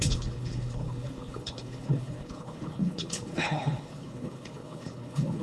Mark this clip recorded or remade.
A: remade